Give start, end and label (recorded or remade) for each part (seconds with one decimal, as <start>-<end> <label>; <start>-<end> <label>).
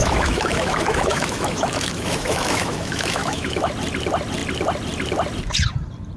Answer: 0.0-3.7 remade; 3.7-6.2 recorded